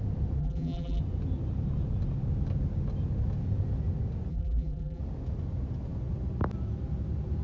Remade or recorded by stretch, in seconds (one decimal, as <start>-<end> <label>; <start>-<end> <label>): 0.0-0.4 recorded; 0.4-1.0 remade; 1.0-4.3 recorded; 4.3-5.0 remade; 5.0-7.4 recorded